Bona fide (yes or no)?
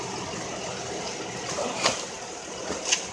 yes